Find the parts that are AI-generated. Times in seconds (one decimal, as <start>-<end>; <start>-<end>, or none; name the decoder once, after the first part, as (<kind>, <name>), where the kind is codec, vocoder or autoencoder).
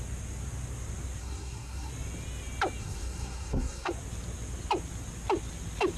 1.2-1.9 (codec, SNAC); 2.8-3.9